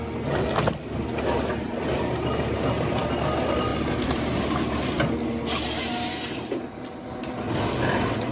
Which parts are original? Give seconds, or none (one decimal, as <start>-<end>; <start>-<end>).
0.0-8.3

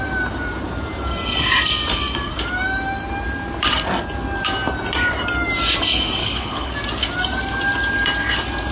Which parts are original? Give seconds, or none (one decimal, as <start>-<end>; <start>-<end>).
0.0-6.2; 6.7-8.7

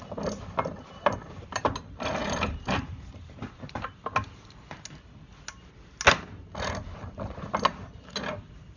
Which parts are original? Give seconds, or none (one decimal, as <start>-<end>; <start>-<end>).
0.0-2.2; 3.9-8.8

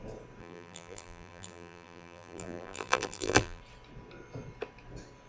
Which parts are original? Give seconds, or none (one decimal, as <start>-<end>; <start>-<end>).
0.0-0.4; 3.6-5.3

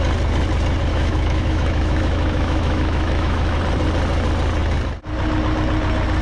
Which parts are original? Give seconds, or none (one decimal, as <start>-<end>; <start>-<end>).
0.0-0.9; 3.6-6.2

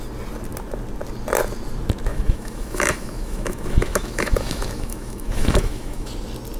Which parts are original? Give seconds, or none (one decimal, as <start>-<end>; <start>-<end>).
0.0-2.1; 6.1-6.6